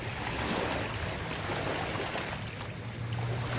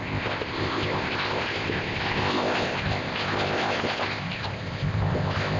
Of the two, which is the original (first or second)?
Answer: first